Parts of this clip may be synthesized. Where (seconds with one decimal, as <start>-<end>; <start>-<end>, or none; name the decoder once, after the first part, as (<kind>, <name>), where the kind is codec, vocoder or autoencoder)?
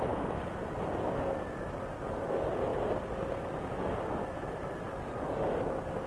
none